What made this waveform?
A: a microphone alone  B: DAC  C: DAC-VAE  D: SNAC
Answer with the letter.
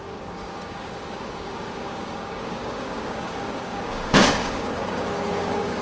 B